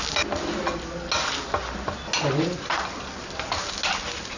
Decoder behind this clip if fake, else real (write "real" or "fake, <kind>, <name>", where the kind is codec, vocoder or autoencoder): real